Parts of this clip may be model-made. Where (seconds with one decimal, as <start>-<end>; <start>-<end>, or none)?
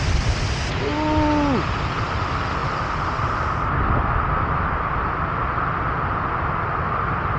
none